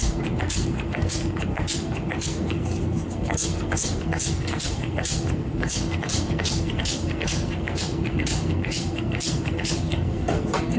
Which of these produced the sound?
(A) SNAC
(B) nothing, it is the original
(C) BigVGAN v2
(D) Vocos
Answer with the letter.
A